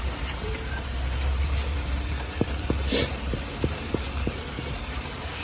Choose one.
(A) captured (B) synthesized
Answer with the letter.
B